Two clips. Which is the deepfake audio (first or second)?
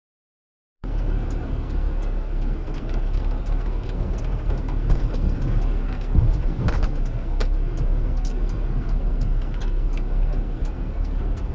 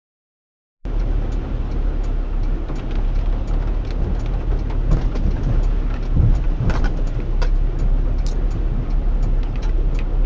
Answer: first